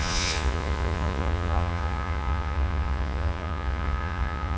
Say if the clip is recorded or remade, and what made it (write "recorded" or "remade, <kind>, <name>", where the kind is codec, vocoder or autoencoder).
remade, vocoder, Vocos